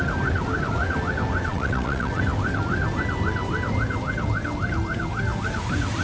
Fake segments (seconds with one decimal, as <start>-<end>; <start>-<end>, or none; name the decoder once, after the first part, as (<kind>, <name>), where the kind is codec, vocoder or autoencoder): 1.5-2.2 (vocoder, WaveNeXt)